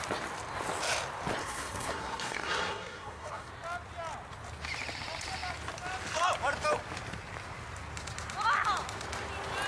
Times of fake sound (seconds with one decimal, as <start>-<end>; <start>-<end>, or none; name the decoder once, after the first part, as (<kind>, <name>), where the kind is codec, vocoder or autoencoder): 1.4-3.5 (codec, SNAC)